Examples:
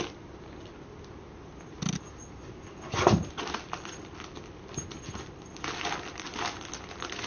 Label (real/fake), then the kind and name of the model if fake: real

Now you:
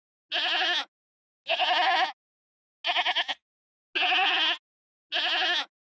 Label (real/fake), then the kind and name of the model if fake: real